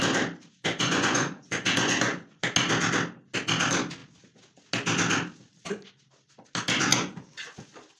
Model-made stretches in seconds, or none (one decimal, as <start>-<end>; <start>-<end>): 0.7-2.4; 6.9-7.6